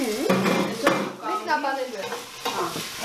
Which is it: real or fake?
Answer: real